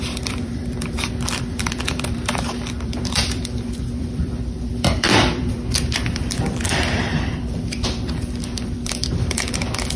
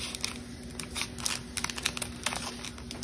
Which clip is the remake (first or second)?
first